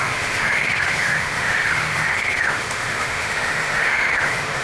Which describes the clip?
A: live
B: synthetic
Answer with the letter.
B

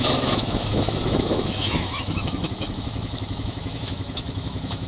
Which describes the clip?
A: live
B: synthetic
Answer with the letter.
B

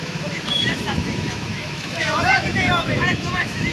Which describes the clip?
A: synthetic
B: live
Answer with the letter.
A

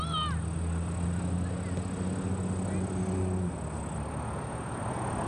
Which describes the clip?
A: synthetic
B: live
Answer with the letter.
B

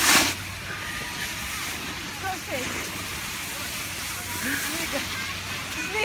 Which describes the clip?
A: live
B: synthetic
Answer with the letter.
A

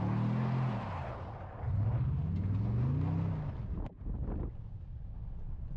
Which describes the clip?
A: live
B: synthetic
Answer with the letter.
A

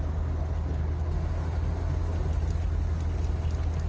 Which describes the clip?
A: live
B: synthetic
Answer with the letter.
A